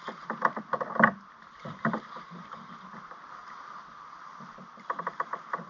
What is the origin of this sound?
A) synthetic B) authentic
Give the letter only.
B